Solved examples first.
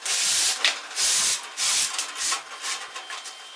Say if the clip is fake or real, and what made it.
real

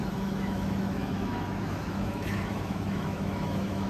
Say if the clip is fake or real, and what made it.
fake, autoencoder, DAC-VAE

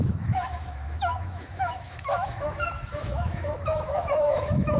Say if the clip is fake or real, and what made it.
fake, autoencoder, DAC-VAE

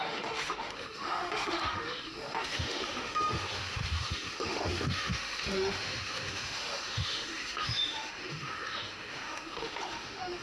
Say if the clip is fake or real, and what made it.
fake, autoencoder, DAC-VAE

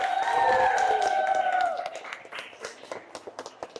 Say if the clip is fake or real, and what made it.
real